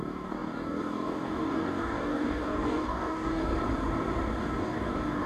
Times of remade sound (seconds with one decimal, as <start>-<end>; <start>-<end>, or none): 0.0-3.5; 4.4-5.3